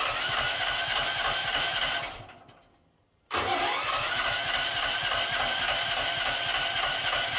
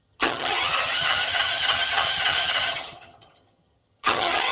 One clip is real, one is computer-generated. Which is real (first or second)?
first